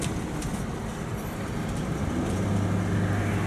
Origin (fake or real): real